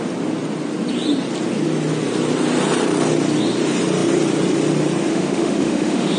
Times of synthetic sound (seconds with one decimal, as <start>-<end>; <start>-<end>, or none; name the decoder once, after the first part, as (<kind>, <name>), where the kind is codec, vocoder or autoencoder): 5.1-6.2 (autoencoder, DAC-VAE)